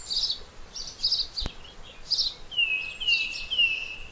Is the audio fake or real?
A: real